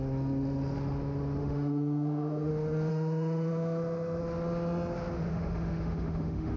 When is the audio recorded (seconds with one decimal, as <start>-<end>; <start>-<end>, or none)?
0.0-1.4; 2.5-2.9; 4.2-5.3

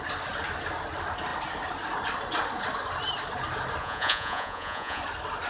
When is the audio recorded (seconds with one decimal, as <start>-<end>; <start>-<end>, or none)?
0.0-3.8; 5.0-5.5

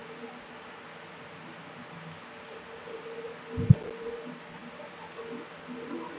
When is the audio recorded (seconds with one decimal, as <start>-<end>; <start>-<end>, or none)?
0.0-6.2